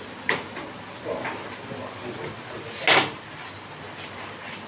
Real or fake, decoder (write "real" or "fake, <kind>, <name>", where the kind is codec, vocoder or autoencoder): real